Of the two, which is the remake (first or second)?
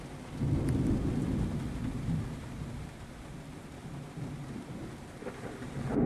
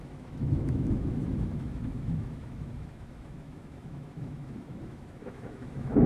second